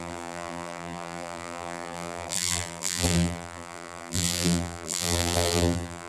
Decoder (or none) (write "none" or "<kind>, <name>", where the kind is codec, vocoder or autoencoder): vocoder, BigVGAN v2